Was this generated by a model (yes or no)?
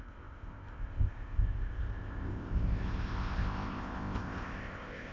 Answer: yes